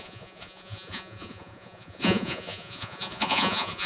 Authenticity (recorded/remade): remade